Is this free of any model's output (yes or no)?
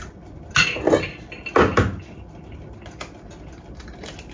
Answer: yes